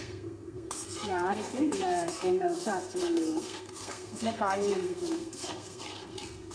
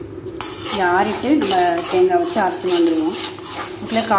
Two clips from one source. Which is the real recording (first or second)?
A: second